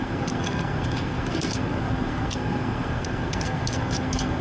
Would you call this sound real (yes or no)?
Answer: no